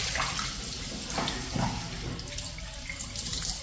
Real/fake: real